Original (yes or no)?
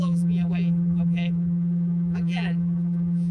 no